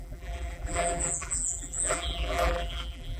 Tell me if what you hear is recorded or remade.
remade